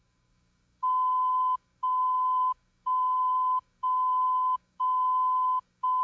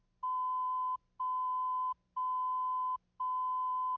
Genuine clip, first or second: second